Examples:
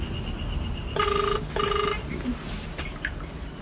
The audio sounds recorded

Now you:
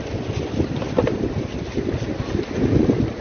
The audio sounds recorded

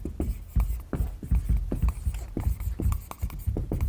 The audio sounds recorded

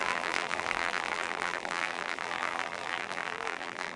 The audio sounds remade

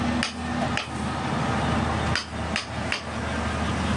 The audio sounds recorded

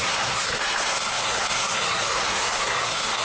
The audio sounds remade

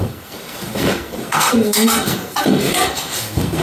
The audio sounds remade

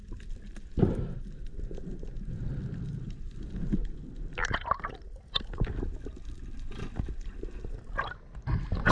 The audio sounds recorded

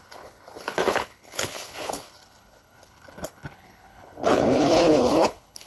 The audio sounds remade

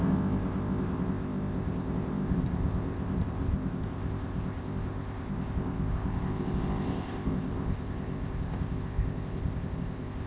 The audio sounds remade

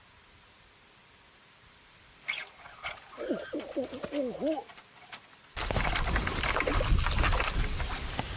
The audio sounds recorded